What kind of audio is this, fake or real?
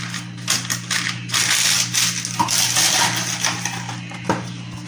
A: real